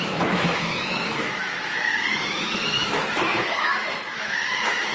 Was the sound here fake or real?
fake